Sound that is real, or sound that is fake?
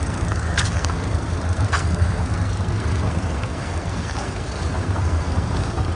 fake